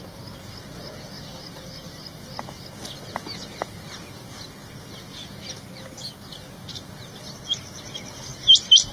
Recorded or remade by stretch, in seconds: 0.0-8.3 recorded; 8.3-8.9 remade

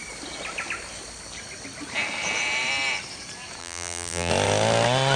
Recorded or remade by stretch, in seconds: 0.0-3.6 recorded; 3.6-4.3 remade; 4.3-5.2 recorded

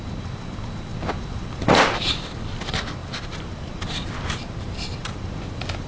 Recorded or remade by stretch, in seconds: 0.0-5.9 remade